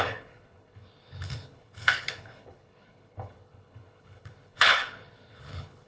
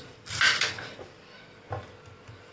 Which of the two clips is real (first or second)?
second